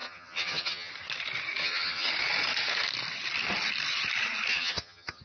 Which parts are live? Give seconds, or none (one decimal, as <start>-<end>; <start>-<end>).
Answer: 0.9-1.6; 2.1-4.5